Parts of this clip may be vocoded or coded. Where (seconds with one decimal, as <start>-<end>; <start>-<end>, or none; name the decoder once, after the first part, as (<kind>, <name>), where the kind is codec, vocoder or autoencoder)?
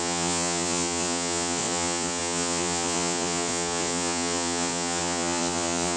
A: 0.0-6.0 (vocoder, Vocos)